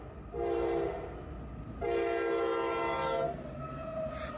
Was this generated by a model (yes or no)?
no